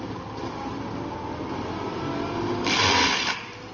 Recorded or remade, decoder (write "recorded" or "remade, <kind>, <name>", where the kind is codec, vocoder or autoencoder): recorded